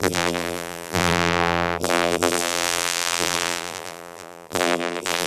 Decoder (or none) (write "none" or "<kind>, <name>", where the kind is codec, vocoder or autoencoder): vocoder, BigVGAN v2